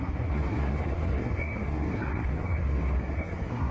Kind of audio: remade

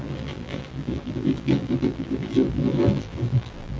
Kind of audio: remade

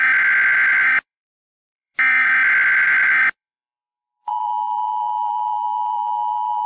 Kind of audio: remade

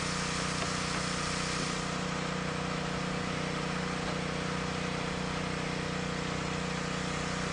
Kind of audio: recorded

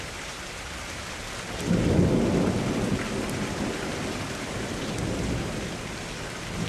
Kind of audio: recorded